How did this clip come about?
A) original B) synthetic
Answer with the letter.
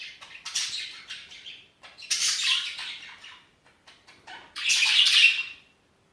B